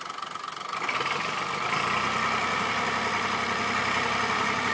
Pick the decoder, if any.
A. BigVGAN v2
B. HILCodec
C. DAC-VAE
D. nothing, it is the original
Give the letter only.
D